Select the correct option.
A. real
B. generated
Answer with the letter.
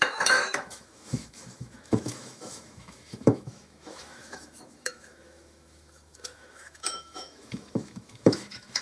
B